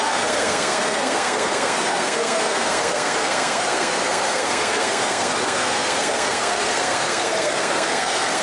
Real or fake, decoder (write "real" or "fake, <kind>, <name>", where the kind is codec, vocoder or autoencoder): fake, codec, SNAC